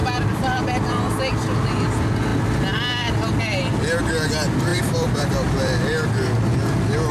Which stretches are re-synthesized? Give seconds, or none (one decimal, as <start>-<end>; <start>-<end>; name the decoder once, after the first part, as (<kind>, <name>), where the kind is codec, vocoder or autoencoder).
0.0-0.6 (vocoder, BigVGAN v2); 4.7-5.8